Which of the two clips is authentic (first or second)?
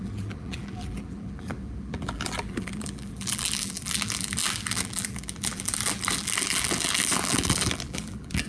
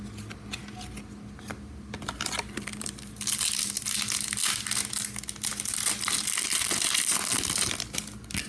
second